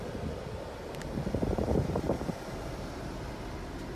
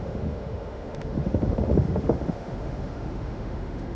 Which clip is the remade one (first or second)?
second